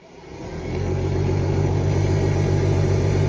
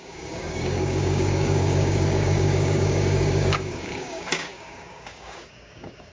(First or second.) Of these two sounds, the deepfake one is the second